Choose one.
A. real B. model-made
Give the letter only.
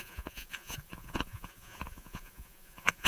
B